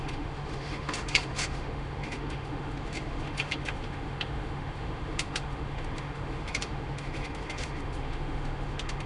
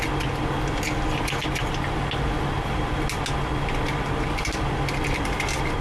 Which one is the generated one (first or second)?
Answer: first